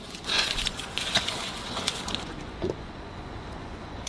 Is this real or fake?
fake